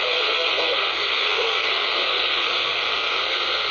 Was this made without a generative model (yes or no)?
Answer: no